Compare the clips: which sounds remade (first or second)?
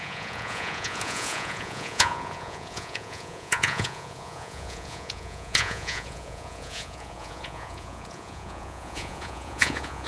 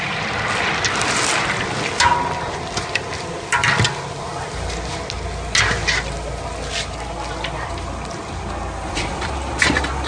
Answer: first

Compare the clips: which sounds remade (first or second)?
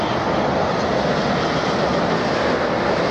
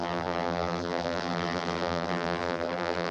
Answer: second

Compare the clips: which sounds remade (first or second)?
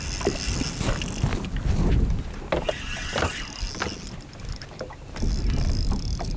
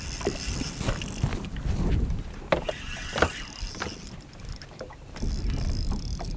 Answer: second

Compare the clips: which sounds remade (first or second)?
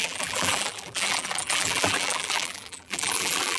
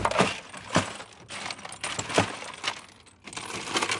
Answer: first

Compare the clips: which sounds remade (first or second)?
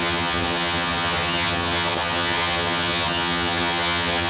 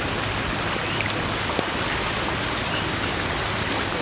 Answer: first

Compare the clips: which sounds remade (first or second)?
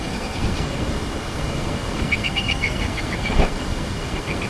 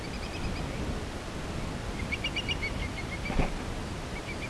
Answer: first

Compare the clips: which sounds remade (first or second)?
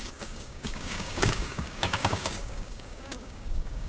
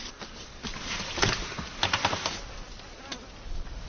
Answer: first